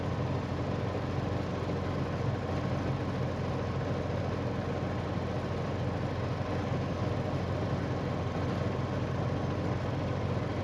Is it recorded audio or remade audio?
recorded